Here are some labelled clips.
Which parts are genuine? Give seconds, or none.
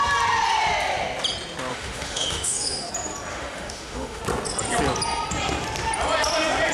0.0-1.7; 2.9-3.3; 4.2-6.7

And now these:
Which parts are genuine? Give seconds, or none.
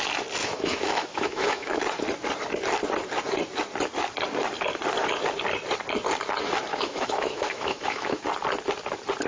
0.0-0.4; 1.8-6.7; 8.2-9.3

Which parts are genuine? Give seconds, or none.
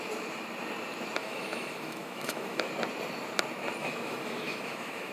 0.0-1.2; 2.7-3.8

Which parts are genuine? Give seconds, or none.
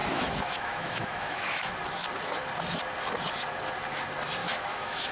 1.7-4.4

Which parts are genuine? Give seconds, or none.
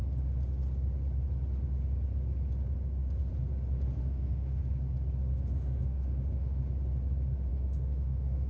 0.0-4.0; 4.6-5.3; 6.6-7.5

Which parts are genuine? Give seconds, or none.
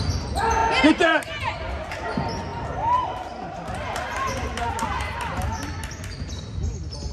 0.0-7.1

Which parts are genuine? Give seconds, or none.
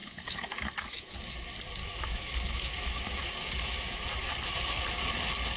1.2-1.8; 4.8-5.6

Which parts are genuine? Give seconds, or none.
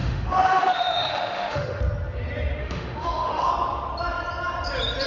1.8-2.6; 3.5-5.1